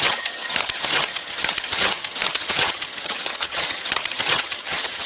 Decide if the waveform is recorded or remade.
remade